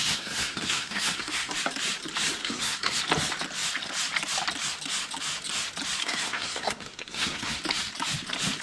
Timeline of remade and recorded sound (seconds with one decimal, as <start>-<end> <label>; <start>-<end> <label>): 0.0-1.5 remade; 1.5-2.4 recorded; 2.4-3.0 remade; 3.0-6.0 recorded; 6.0-7.6 remade; 7.6-8.6 recorded